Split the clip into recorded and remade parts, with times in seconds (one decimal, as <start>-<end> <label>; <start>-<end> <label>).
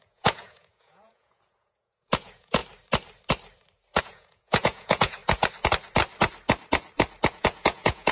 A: 0.0-2.6 remade; 2.6-4.0 recorded; 4.0-5.2 remade; 5.2-7.3 recorded; 7.3-8.1 remade